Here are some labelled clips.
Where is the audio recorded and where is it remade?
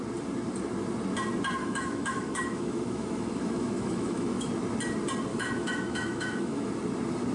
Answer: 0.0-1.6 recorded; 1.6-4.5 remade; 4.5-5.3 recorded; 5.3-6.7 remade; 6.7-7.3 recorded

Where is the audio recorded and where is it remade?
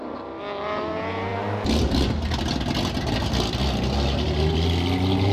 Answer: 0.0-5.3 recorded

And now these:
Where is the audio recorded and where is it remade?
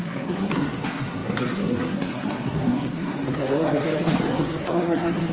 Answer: 0.0-5.3 remade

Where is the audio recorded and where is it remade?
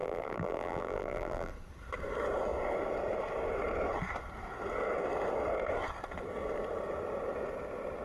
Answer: 0.0-1.5 remade; 1.5-8.0 recorded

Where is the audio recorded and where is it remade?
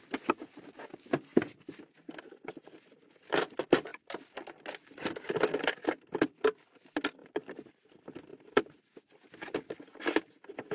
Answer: 0.0-7.2 recorded; 7.2-7.8 remade; 7.8-8.3 recorded; 8.3-9.3 remade; 9.3-10.7 recorded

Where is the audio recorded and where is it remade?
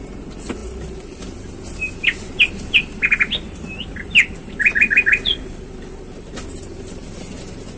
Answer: 0.0-7.8 recorded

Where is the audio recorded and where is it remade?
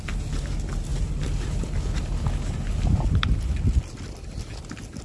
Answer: 0.0-5.0 recorded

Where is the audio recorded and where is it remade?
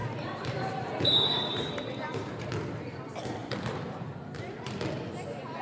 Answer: 0.0-2.5 remade; 2.5-3.4 recorded; 3.4-4.8 remade; 4.8-5.6 recorded